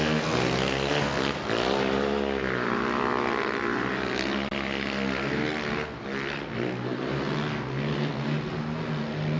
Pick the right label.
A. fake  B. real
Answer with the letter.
B